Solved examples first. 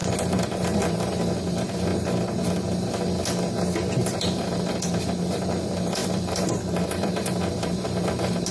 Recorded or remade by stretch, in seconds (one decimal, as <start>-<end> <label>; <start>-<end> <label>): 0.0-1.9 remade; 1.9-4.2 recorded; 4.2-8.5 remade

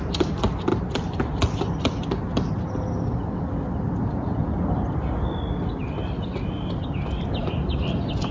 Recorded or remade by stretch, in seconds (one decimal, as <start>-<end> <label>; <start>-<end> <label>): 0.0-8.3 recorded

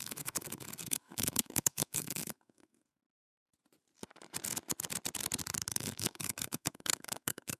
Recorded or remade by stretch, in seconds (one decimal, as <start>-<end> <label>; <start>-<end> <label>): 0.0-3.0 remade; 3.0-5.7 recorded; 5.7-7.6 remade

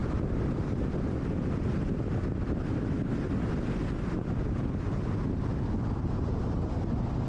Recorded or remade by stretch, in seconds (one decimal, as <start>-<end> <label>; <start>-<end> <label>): 0.0-7.3 recorded

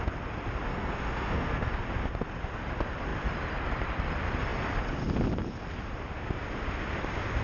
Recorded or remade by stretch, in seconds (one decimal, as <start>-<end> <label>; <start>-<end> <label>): 0.0-0.7 recorded; 0.7-1.8 remade; 1.8-7.4 recorded

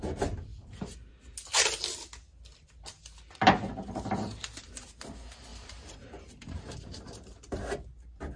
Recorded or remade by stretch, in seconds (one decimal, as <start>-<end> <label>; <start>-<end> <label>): 0.0-0.5 recorded; 0.5-1.1 remade; 1.1-5.5 recorded; 5.5-7.6 remade; 7.6-8.4 recorded

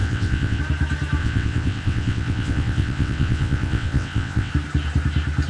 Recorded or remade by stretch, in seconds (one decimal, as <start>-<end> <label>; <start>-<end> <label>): 0.0-0.6 remade; 0.6-1.2 recorded; 1.2-4.5 remade; 4.5-5.5 recorded

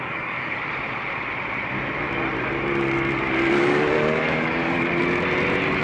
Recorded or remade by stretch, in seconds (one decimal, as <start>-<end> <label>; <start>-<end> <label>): 0.0-0.6 remade; 0.6-3.6 recorded; 3.6-4.9 remade; 4.9-5.8 recorded